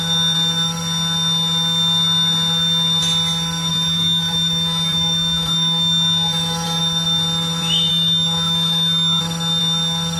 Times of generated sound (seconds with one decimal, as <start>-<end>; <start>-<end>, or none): 3.7-6.8; 7.9-9.2